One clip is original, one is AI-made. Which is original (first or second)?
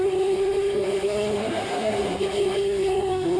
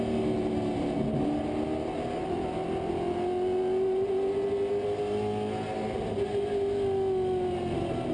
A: second